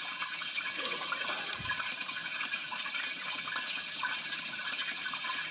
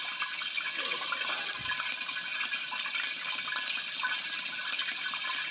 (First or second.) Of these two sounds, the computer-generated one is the first